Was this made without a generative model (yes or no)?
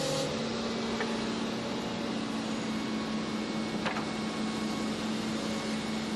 yes